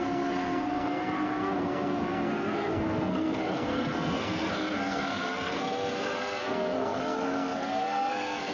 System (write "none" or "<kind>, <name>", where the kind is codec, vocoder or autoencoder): codec, SNAC